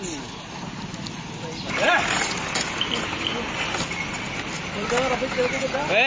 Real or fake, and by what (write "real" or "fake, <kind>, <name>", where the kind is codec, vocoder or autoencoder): real